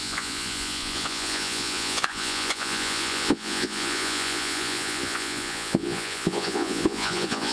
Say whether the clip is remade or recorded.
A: remade